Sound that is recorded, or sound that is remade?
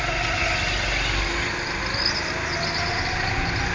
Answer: recorded